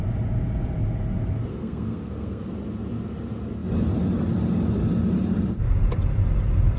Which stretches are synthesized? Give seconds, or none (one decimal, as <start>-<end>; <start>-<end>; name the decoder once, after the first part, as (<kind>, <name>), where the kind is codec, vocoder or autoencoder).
1.5-2.4 (codec, SNAC)